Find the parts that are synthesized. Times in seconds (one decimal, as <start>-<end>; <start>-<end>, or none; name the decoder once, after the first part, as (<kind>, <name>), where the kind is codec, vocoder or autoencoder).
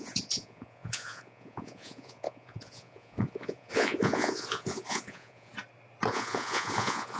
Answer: 0.0-5.5 (vocoder, Vocos); 6.1-7.2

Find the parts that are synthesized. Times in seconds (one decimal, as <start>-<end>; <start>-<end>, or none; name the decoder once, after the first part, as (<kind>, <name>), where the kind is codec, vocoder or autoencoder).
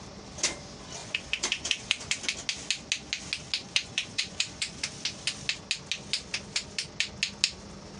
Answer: 1.0-2.2 (vocoder, Vocos); 3.6-4.8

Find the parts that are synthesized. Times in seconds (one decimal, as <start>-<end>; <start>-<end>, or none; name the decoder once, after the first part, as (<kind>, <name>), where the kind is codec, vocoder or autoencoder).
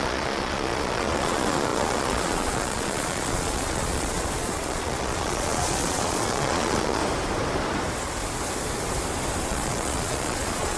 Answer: 0.0-7.0 (vocoder, Vocos); 9.5-10.8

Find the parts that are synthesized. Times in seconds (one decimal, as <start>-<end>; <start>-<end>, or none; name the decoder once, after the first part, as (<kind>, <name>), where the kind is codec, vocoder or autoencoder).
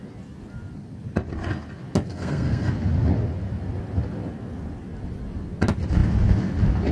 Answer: 2.1-2.7 (codec, SNAC)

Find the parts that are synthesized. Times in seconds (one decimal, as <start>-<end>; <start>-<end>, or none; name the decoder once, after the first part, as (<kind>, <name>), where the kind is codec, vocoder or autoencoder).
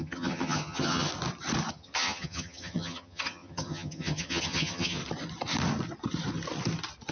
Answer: 0.0-1.1 (vocoder, HiFi-GAN); 1.7-5.0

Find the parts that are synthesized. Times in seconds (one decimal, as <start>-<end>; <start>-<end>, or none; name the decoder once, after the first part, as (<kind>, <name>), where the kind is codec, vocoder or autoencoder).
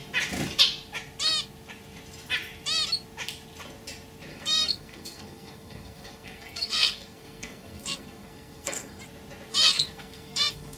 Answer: 4.3-9.0 (codec, SNAC); 9.5-10.8